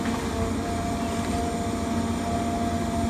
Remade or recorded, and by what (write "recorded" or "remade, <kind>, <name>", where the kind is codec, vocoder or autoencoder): recorded